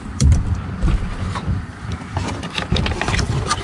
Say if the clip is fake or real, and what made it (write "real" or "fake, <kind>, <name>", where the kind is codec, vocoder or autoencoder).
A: fake, vocoder, BigVGAN v2